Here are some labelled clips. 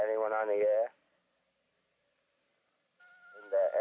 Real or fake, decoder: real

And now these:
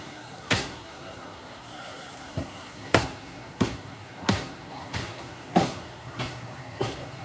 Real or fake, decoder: fake, codec, SNAC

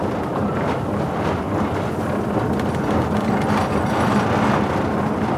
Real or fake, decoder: real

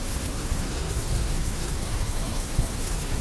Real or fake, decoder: fake, codec, SNAC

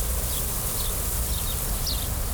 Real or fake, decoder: real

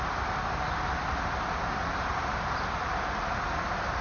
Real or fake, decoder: real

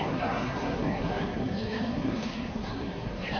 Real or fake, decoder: fake, codec, SNAC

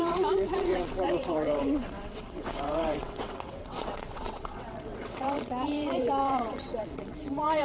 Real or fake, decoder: fake, vocoder, WaveNeXt